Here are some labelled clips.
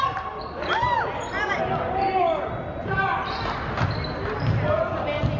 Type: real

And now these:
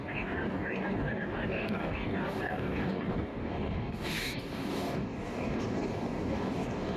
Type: fake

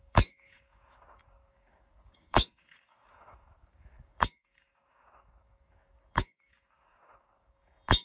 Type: fake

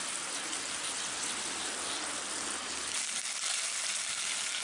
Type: real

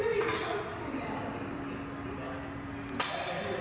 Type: real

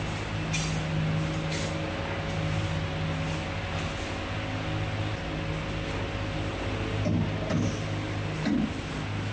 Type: real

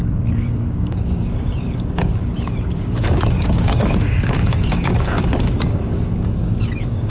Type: fake